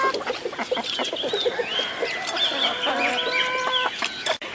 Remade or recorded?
recorded